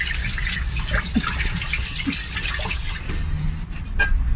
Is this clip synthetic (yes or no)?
no